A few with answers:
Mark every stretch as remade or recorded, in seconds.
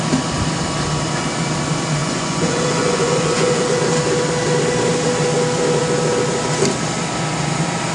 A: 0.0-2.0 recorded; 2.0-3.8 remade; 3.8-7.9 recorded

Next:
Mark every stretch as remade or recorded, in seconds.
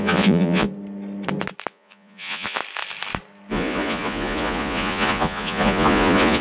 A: 0.0-0.7 remade; 0.7-1.7 recorded; 1.7-2.6 remade; 2.6-3.5 recorded; 3.5-6.4 remade